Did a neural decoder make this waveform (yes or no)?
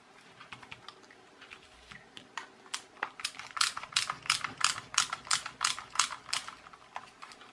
no